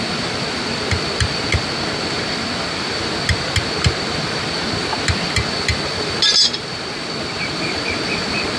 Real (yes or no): yes